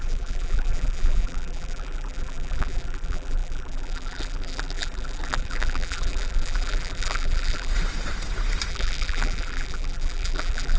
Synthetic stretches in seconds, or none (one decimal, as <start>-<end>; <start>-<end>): 0.0-7.7; 8.7-10.8